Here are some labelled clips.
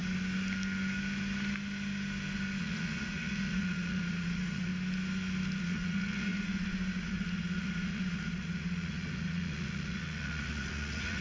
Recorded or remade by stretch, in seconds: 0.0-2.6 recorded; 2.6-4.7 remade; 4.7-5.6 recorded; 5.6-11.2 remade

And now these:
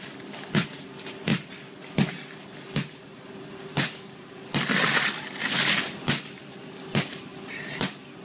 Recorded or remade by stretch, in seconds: 0.0-8.2 recorded

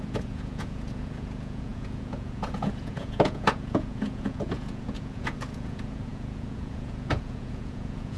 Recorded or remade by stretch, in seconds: 0.0-8.2 remade

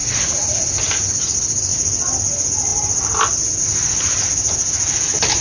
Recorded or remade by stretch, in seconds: 0.0-0.6 remade; 0.6-5.4 recorded

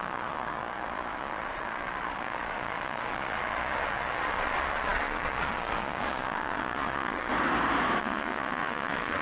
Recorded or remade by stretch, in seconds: 0.0-7.3 remade; 7.3-8.0 recorded; 8.0-9.2 remade

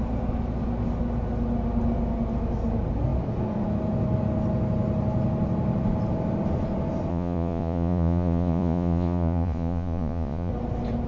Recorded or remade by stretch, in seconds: 0.0-7.1 recorded; 7.1-10.5 remade; 10.5-11.1 recorded